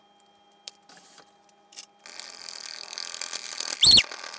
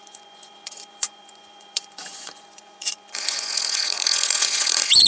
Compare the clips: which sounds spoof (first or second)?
second